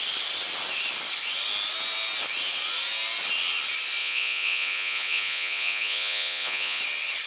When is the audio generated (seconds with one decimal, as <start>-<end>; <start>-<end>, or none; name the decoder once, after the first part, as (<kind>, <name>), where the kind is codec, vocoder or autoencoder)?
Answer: 4.0-6.8 (vocoder, Vocos)